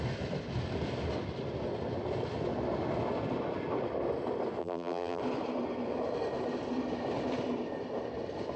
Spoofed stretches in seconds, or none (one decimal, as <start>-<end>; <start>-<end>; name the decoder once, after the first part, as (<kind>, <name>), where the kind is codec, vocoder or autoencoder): 4.6-5.2 (vocoder, BigVGAN v2)

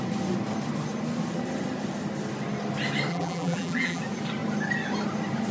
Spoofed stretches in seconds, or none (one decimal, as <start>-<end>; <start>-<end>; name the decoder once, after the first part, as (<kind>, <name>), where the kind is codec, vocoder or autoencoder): 3.1-4.0 (vocoder, BigVGAN v2)

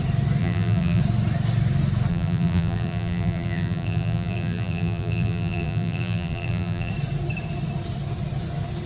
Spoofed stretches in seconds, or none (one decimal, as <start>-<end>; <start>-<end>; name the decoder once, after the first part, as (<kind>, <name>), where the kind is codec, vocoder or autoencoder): 0.4-1.0 (vocoder, BigVGAN v2); 2.1-6.9

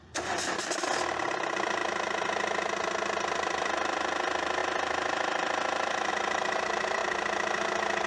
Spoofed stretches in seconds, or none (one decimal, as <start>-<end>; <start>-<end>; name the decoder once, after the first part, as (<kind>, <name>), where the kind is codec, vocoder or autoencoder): 0.0-1.8 (vocoder, BigVGAN v2); 3.7-8.1

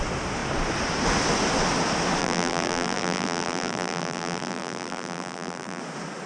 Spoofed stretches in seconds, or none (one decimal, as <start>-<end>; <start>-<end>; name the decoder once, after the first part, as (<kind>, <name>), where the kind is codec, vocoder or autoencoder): 2.2-5.8 (vocoder, BigVGAN v2)

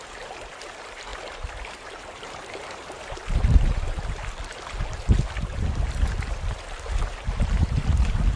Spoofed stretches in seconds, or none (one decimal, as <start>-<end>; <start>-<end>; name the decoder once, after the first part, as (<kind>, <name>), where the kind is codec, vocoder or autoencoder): 0.0-1.1 (vocoder, BigVGAN v2); 1.7-3.2

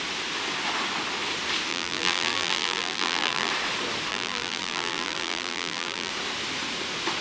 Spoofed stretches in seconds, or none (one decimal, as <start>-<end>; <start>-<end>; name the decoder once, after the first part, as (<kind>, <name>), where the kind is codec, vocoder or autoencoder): 1.7-3.5 (vocoder, BigVGAN v2); 4.1-6.1

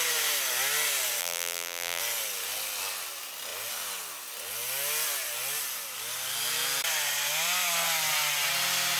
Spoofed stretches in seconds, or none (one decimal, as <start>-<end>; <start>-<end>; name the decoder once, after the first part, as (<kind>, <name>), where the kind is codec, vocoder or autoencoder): 1.2-2.0 (vocoder, BigVGAN v2)